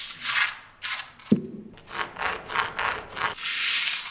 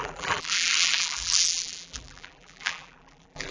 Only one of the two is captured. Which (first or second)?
first